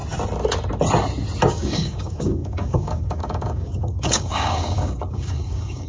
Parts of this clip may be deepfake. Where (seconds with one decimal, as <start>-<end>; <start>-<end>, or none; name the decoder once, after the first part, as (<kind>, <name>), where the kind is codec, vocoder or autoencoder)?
1.5-5.9 (codec, DAC)